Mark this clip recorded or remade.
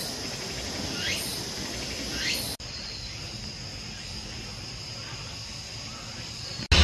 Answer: recorded